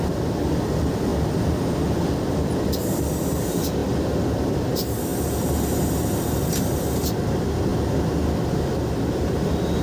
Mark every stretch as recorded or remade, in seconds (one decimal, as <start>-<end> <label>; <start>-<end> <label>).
0.0-1.1 remade; 1.1-2.3 recorded; 2.3-5.1 remade; 5.1-6.4 recorded; 6.4-7.7 remade; 7.7-9.8 recorded